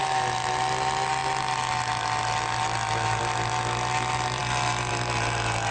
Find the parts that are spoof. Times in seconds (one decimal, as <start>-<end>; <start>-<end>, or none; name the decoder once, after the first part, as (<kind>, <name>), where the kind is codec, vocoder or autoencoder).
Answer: none